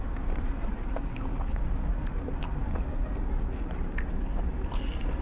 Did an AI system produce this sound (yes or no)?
no